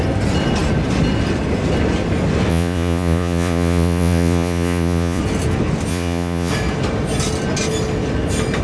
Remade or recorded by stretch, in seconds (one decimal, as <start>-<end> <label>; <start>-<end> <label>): 0.0-2.5 recorded; 2.5-5.2 remade; 5.2-5.9 recorded; 5.9-6.5 remade; 6.5-8.6 recorded